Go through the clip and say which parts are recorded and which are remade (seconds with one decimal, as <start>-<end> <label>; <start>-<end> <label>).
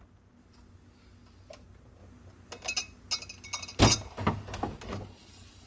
0.0-5.7 recorded